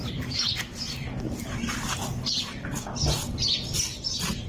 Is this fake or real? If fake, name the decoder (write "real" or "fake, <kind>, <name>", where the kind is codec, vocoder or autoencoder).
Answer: real